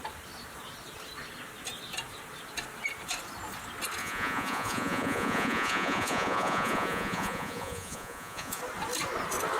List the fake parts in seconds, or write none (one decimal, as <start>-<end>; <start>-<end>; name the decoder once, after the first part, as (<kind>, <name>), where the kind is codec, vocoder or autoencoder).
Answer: 4.0-8.6 (vocoder, Vocos)